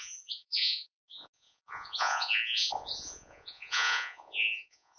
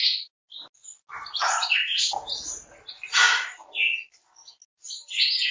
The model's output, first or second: first